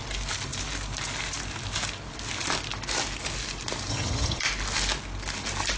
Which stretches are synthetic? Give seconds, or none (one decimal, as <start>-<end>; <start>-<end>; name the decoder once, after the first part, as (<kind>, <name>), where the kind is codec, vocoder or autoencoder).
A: 3.9-4.4 (vocoder, HiFi-GAN)